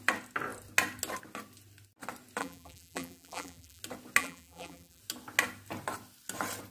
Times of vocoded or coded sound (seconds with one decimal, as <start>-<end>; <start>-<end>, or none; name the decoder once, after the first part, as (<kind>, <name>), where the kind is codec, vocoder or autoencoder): 2.4-3.8 (vocoder, BigVGAN v2); 4.2-5.0